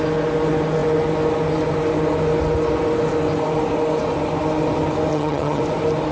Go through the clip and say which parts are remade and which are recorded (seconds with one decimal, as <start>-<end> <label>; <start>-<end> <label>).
0.0-5.1 recorded; 5.1-5.6 remade; 5.6-6.1 recorded